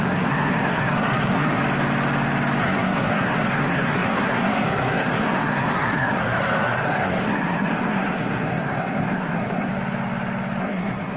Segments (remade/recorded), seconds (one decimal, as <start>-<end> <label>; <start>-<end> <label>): 0.0-1.6 remade; 1.6-2.6 recorded; 2.6-9.7 remade; 9.7-10.6 recorded; 10.6-11.2 remade